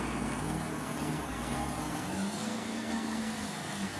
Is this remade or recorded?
remade